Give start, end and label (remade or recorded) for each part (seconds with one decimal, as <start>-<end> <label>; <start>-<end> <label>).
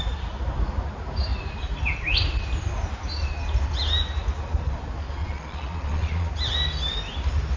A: 0.0-5.2 recorded; 5.2-6.3 remade; 6.3-7.6 recorded